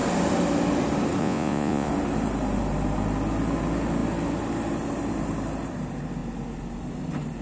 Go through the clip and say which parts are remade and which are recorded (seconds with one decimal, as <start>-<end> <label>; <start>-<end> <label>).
0.0-1.2 recorded; 1.2-1.9 remade; 1.9-7.4 recorded